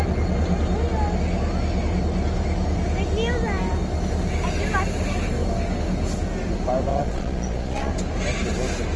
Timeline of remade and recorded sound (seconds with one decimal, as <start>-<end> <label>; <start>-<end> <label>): 0.0-6.9 recorded; 6.9-7.9 remade; 7.9-9.0 recorded